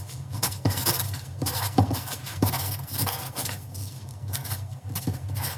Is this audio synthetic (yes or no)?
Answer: yes